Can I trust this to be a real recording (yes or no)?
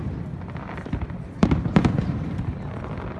no